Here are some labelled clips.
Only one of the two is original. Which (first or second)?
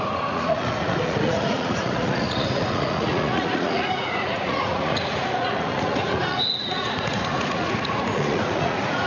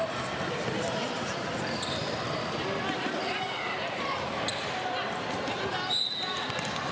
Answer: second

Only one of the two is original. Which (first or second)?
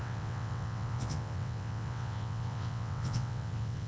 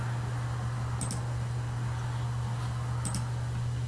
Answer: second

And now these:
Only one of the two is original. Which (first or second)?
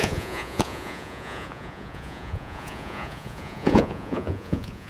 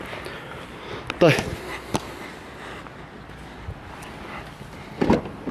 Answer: second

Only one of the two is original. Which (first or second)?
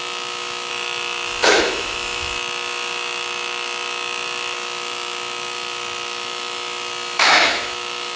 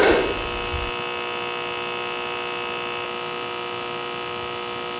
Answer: second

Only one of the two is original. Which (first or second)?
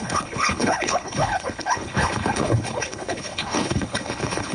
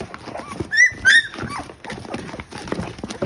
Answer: second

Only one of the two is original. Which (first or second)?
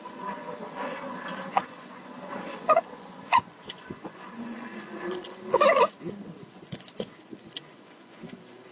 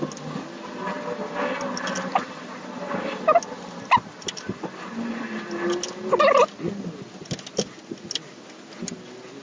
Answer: second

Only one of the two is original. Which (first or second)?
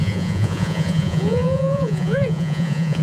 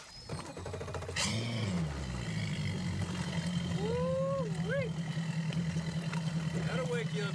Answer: second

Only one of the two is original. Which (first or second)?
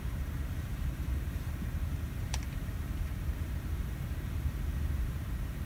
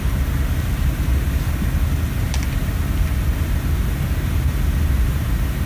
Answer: second